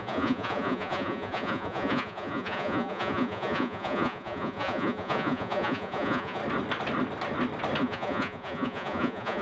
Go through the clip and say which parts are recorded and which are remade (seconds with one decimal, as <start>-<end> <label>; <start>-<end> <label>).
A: 0.0-6.4 remade; 6.4-7.8 recorded; 7.8-9.4 remade